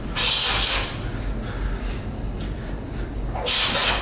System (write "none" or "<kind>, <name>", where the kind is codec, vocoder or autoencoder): none